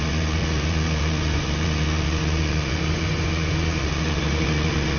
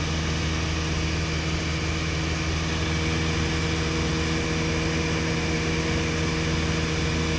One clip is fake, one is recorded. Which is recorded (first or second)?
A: second